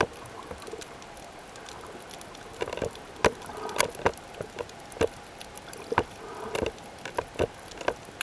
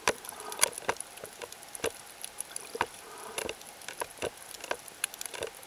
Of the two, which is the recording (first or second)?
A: first